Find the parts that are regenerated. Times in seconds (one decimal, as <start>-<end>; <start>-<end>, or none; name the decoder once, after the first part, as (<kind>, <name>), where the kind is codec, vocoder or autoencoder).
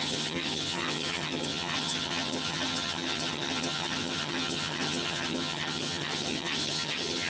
0.0-7.3 (vocoder, HiFi-GAN)